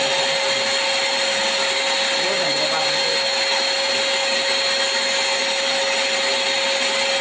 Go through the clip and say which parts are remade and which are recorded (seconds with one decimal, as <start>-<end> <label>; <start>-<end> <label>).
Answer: 0.0-7.2 recorded